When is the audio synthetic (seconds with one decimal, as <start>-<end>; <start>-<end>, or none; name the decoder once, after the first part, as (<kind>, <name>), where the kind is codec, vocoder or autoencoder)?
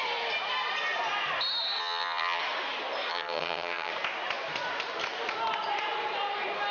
1.8-2.4 (vocoder, HiFi-GAN); 3.1-3.9